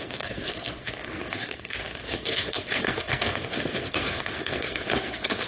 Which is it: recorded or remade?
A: remade